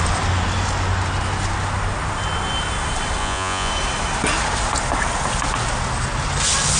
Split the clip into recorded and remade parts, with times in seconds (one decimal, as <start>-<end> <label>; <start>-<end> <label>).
0.0-3.2 recorded; 3.2-3.7 remade; 3.7-6.8 recorded